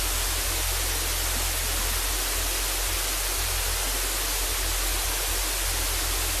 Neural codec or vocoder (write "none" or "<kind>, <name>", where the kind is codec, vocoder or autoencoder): none